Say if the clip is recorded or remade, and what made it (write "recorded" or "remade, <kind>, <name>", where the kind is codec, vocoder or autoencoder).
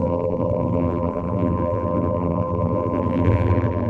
remade, vocoder, BigVGAN v2